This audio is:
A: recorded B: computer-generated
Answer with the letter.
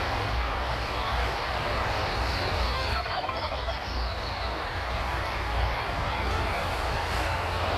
B